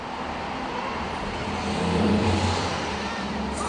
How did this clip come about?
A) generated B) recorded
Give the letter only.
A